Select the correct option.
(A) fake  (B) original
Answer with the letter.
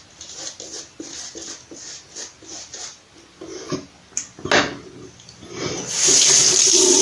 B